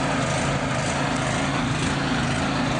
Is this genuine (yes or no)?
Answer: yes